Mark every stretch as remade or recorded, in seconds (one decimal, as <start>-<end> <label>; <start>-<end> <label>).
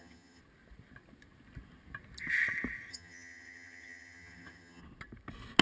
0.0-0.4 remade; 0.4-2.9 recorded; 2.9-4.8 remade; 4.8-5.6 recorded